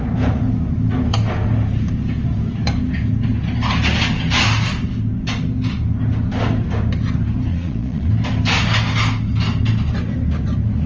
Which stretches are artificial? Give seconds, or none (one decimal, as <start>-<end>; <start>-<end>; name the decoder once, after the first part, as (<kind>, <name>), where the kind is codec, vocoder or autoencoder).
7.5-8.1 (vocoder, Vocos)